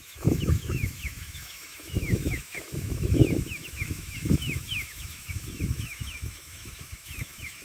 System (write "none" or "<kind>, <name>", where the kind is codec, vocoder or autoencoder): autoencoder, DAC-VAE